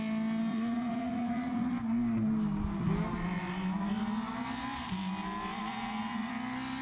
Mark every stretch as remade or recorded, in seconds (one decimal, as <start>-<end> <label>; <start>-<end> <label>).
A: 0.0-0.5 recorded; 0.5-1.7 remade; 1.7-5.7 recorded; 5.7-6.3 remade; 6.3-6.8 recorded